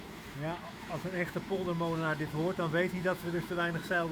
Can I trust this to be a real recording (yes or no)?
no